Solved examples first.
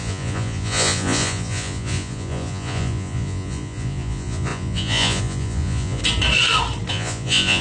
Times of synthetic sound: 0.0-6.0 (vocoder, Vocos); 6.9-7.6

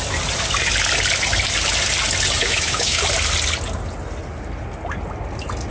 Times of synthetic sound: 2.4-3.0 (autoencoder, DAC-VAE)

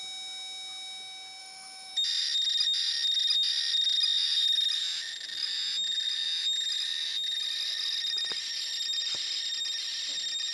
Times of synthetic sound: 1.4-1.9 (autoencoder, DAC-VAE)

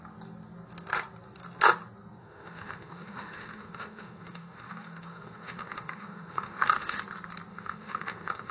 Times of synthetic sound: 2.2-7.0 (autoencoder, DAC-VAE); 7.5-8.5

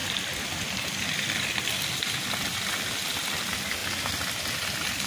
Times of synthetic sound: none

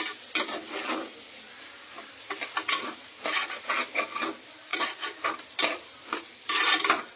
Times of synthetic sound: none